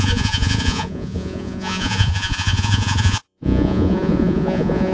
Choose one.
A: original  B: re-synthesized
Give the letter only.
B